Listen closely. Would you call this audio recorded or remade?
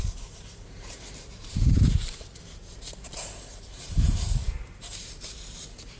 remade